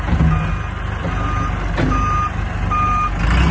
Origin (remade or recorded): recorded